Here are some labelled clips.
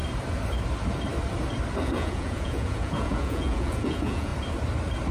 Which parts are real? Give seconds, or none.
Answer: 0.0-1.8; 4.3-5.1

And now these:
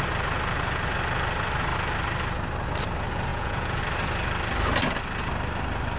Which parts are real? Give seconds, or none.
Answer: 0.0-3.3; 3.8-6.0

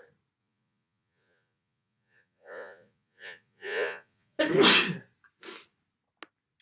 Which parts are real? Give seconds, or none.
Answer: 0.0-0.4; 4.4-6.6

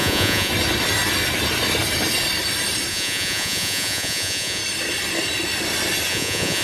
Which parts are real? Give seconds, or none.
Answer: 0.5-2.9; 4.6-6.1

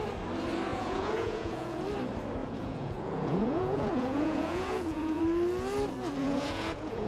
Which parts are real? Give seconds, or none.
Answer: 0.0-0.7; 1.8-2.4; 5.2-6.2